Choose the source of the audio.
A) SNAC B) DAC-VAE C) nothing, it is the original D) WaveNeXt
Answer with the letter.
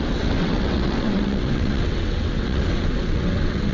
D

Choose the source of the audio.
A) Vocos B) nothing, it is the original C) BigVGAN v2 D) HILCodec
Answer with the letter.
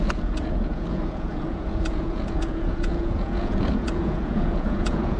A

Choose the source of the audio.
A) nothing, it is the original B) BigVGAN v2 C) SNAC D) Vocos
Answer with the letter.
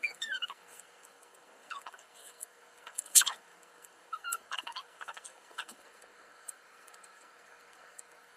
C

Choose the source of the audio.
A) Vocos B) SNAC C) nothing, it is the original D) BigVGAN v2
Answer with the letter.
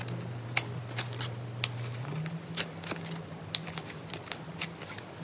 C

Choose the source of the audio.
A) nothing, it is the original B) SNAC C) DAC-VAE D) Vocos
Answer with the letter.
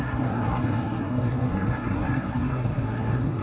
B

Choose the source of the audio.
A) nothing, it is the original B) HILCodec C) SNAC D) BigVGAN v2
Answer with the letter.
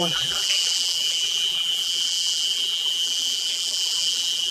D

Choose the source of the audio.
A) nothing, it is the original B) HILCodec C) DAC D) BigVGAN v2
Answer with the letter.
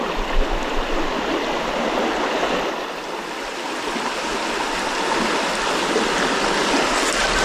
A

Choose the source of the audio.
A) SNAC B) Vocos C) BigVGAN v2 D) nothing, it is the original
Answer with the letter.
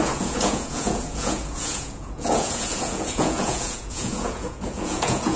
B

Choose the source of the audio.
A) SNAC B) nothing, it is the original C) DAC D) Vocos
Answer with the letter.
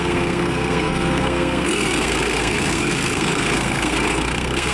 A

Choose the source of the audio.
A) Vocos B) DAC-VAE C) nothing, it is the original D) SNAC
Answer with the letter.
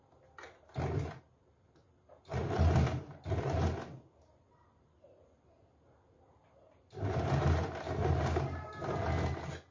C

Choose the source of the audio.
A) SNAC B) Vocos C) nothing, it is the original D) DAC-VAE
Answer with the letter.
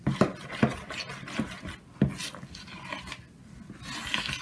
C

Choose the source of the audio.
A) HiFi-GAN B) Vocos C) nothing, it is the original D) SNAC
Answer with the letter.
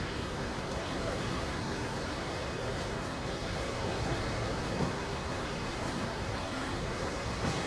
D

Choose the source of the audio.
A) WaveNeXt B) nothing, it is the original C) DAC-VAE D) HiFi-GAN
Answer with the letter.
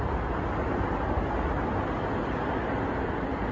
B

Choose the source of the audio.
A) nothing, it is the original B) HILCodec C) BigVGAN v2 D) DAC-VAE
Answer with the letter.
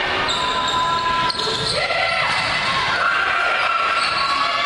A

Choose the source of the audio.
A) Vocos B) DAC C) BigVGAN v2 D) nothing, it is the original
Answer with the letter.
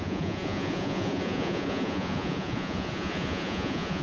A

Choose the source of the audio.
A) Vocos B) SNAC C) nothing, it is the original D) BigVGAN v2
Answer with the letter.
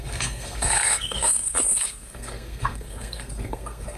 B